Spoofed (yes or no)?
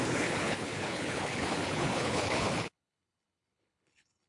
yes